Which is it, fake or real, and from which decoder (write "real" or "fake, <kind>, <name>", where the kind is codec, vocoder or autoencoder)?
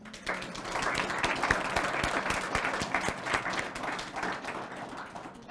real